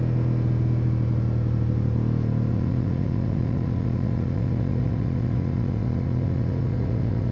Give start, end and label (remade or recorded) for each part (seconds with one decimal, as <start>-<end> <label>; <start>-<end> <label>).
0.0-2.5 recorded; 2.5-7.3 remade